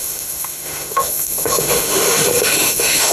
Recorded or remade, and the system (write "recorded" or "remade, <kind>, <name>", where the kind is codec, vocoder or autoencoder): remade, autoencoder, DAC-VAE